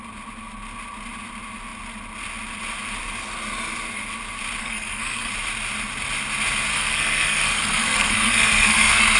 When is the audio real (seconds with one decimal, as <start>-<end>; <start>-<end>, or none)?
0.0-4.6; 5.3-6.7

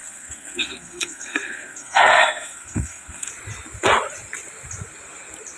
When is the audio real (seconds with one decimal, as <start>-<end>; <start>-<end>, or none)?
3.3-5.6

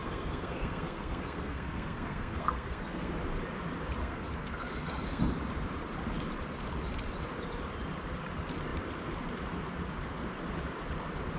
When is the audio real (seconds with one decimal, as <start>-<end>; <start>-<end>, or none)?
3.1-4.0; 5.2-11.4

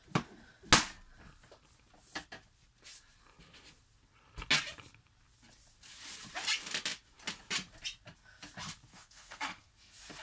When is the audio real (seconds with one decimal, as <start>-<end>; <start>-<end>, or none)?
0.0-8.9; 9.7-10.2

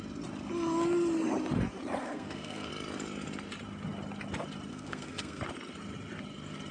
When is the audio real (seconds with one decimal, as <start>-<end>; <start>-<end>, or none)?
0.0-2.0; 2.7-4.7; 5.4-6.7

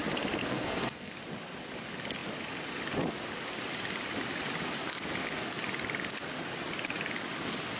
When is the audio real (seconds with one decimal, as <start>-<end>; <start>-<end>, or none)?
0.0-0.4; 1.1-7.8